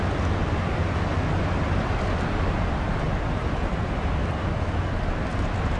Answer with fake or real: real